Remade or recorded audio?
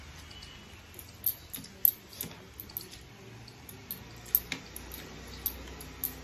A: recorded